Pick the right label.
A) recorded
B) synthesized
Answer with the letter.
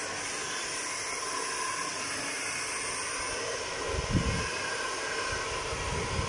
A